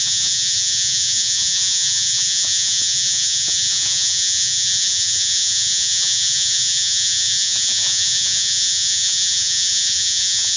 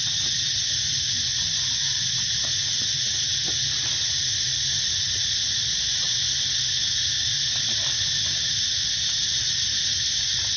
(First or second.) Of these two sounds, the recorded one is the second